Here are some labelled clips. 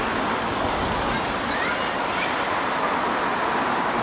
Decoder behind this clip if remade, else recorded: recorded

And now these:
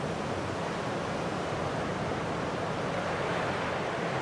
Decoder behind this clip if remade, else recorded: recorded